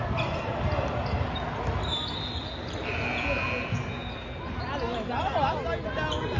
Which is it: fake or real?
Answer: real